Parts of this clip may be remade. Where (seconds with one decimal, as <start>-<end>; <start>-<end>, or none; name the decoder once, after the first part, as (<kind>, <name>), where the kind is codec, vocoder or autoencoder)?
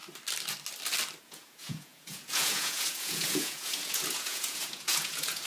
1.2-5.5 (vocoder, Vocos)